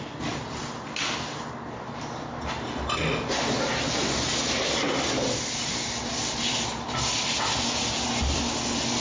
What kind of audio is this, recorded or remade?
recorded